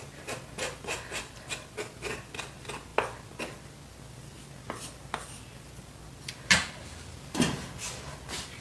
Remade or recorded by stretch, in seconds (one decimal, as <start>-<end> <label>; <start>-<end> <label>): 0.0-8.6 recorded